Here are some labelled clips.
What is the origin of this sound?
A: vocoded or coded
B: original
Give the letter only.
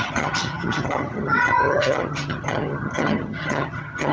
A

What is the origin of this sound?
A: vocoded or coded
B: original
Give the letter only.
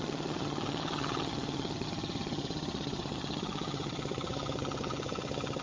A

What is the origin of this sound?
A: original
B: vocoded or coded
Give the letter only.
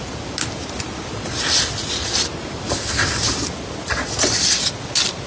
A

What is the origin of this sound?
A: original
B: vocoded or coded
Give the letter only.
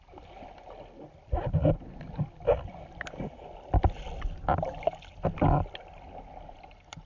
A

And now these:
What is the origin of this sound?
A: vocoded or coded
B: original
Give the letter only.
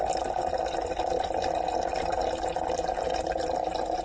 B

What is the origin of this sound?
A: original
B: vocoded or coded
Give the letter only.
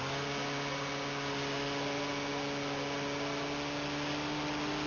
A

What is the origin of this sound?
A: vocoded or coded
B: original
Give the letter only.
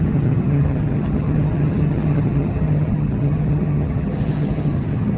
A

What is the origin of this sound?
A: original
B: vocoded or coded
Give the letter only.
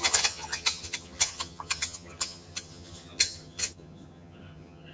B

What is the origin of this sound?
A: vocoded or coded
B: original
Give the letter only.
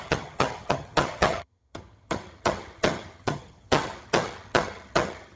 A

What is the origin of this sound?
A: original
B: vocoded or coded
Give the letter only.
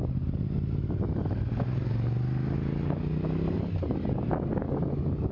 A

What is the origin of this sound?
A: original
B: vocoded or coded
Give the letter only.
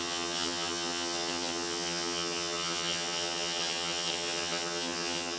B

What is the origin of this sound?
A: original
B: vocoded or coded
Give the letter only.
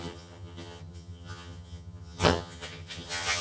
B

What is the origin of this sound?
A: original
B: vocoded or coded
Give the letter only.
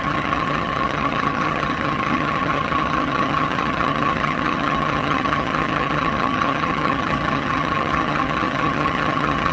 B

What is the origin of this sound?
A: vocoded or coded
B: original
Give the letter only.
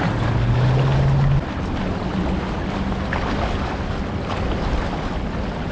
B